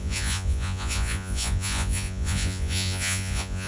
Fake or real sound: fake